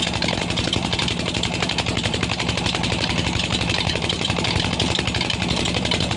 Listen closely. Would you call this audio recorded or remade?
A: remade